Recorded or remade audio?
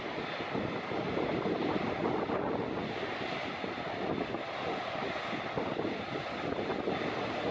recorded